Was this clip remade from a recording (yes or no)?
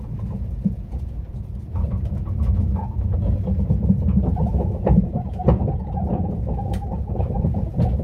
yes